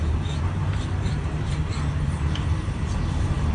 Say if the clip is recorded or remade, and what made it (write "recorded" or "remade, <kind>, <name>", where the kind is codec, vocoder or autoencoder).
remade, vocoder, BigVGAN v2